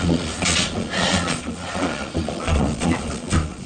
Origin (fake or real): fake